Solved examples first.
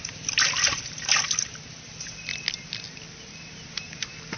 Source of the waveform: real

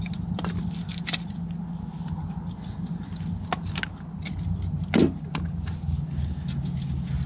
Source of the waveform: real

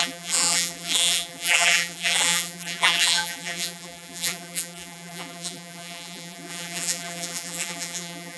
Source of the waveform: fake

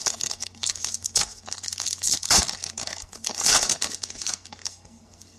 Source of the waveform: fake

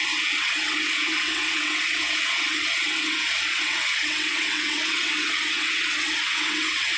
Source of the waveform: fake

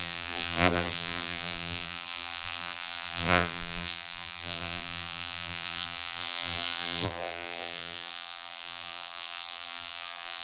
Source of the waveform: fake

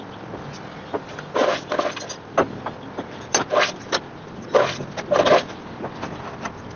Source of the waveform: real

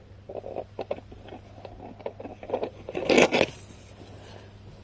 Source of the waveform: real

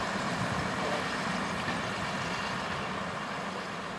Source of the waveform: real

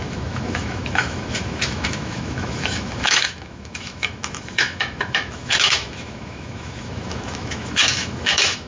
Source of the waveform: fake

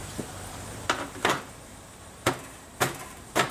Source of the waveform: fake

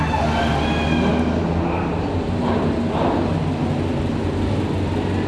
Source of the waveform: real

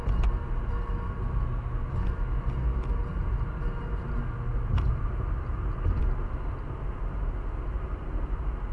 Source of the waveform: real